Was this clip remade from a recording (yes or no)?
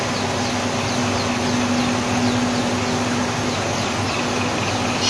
no